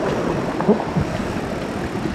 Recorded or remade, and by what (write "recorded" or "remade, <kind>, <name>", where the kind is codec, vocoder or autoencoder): remade, vocoder, BigVGAN v2